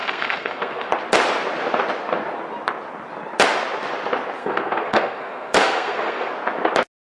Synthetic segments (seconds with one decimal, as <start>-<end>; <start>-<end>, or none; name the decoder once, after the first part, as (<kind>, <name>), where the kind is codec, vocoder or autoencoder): 0.0-0.9 (codec, SNAC); 4.4-6.3